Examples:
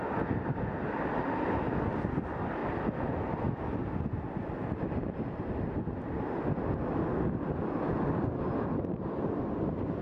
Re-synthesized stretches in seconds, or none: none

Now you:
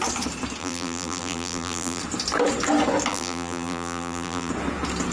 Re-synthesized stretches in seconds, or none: 0.6-2.0; 3.1-4.5

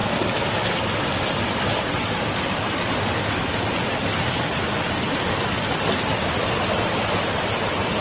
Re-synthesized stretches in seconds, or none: none

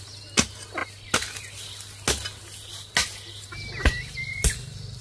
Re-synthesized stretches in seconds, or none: none